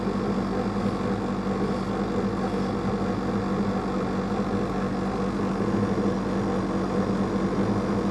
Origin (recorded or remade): recorded